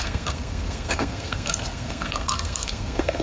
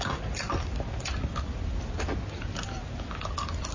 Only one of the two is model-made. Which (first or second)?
first